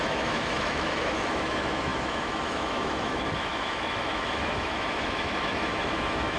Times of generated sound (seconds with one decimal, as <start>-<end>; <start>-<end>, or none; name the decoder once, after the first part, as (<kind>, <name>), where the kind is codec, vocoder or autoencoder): 0.0-6.4 (autoencoder, DAC-VAE)